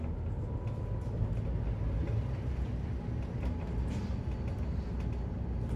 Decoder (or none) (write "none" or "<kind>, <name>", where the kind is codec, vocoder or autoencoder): none